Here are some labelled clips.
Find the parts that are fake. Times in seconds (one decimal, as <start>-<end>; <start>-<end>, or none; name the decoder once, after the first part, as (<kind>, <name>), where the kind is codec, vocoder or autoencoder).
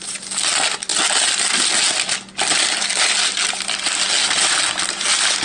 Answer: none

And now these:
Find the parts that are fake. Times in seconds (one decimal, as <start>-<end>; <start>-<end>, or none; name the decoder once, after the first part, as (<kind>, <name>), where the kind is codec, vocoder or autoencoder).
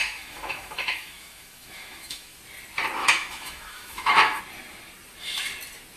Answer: 0.0-2.4 (autoencoder, DAC-VAE); 3.0-4.4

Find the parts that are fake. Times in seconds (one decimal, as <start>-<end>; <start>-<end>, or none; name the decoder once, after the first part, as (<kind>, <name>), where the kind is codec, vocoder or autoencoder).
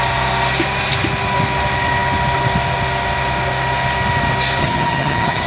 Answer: 4.6-5.5 (vocoder, HiFi-GAN)